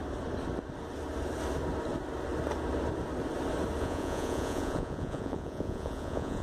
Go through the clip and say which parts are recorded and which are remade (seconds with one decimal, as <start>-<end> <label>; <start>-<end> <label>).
0.0-3.8 recorded; 3.8-6.4 remade